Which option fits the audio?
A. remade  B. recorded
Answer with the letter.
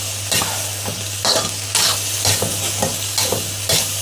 B